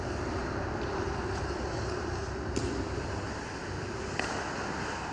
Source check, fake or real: real